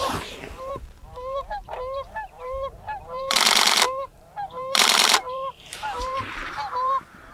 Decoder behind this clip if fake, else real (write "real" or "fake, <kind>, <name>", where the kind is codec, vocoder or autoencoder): fake, vocoder, BigVGAN v2